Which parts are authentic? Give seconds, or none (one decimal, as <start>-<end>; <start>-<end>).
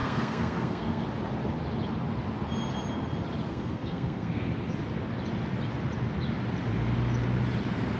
1.0-3.5; 4.5-8.0